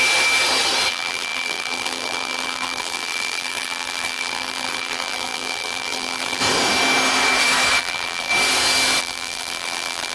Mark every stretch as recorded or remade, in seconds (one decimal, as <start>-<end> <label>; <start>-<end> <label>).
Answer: 0.0-0.9 recorded; 0.9-6.4 remade; 6.4-7.8 recorded; 7.8-8.3 remade; 8.3-9.0 recorded; 9.0-10.1 remade